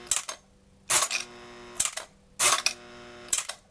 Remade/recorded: recorded